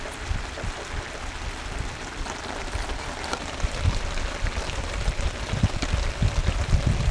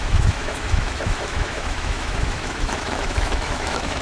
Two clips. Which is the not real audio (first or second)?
second